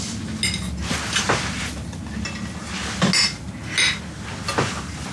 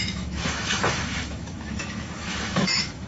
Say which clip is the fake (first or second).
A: second